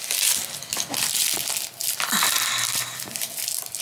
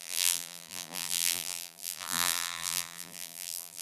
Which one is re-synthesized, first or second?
second